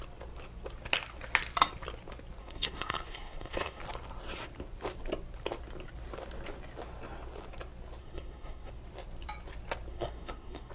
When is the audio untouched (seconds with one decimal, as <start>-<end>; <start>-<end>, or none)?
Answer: 0.0-2.4; 3.8-8.0; 8.7-9.9

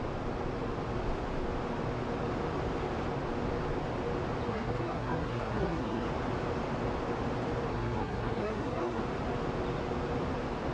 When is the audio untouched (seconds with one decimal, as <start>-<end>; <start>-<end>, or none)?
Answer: 0.0-4.5; 6.1-7.7; 9.0-10.7

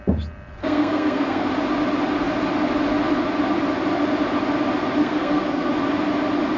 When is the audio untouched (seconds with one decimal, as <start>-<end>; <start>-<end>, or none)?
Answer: 0.0-0.6; 1.5-5.0; 5.7-6.6

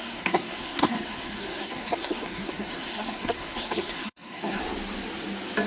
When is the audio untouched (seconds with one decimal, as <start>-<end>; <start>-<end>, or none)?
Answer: 4.6-5.7